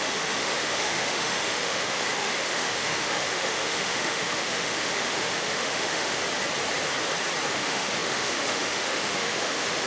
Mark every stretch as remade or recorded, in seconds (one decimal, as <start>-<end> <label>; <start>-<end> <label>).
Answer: 0.0-6.2 remade; 6.2-7.5 recorded; 7.5-9.9 remade